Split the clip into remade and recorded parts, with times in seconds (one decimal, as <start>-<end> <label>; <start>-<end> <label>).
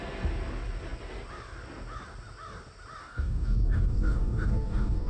0.0-3.0 recorded; 3.0-5.1 remade